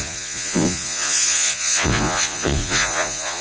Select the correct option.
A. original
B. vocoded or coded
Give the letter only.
B